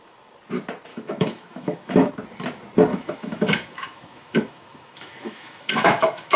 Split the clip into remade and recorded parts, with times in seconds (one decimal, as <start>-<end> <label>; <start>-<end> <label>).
0.0-0.9 recorded; 0.9-2.1 remade; 2.1-2.9 recorded; 2.9-6.4 remade